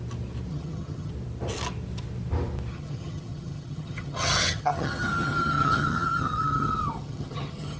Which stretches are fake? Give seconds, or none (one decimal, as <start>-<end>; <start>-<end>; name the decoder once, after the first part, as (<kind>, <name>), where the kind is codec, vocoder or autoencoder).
0.5-1.1 (vocoder, HiFi-GAN); 2.7-7.8